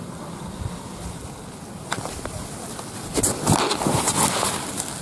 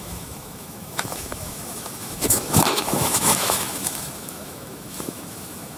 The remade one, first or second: second